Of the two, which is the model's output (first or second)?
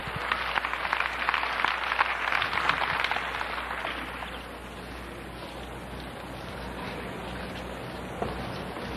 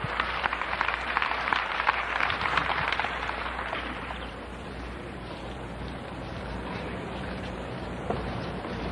second